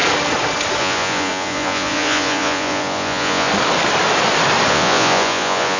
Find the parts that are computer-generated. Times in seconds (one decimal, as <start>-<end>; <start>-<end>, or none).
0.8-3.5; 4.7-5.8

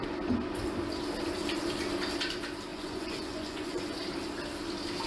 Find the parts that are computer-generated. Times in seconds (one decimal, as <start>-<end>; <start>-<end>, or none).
2.7-4.0

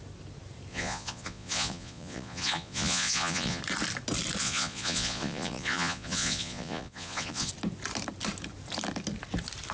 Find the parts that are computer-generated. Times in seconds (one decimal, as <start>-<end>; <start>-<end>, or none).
0.7-3.6; 4.4-7.5